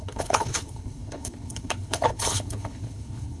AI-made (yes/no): yes